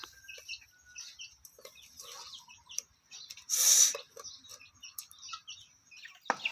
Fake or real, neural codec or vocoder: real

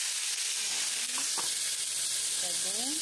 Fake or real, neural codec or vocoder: real